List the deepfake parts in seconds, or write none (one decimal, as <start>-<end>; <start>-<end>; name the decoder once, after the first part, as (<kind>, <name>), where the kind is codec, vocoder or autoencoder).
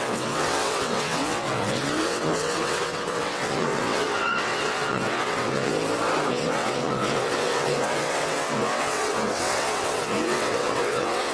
0.0-5.7 (vocoder, WaveNeXt); 6.3-11.3